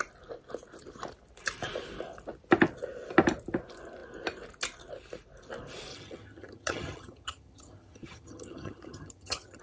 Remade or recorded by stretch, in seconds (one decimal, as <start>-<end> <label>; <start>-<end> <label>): 0.0-5.9 recorded; 5.9-9.6 remade